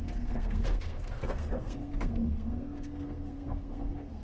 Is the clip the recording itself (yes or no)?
no